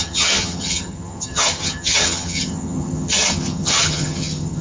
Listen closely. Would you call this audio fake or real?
fake